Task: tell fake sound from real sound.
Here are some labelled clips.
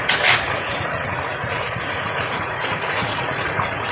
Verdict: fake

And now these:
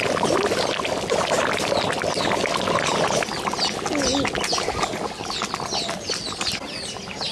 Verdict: real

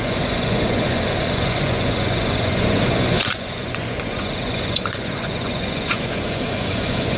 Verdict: fake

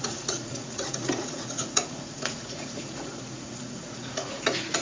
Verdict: fake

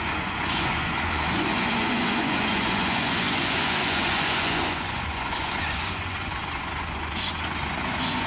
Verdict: fake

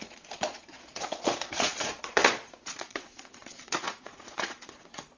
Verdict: fake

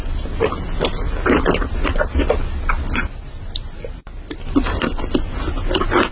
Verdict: real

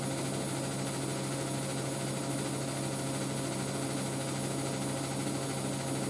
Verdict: real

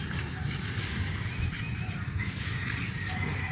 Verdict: real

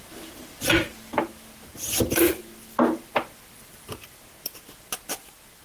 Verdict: real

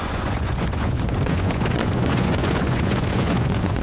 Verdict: fake